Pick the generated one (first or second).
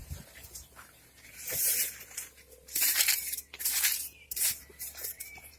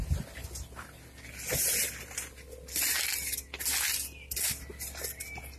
first